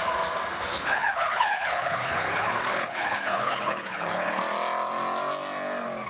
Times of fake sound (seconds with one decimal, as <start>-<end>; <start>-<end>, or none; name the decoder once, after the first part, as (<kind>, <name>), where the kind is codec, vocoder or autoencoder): 0.7-4.4 (codec, HILCodec)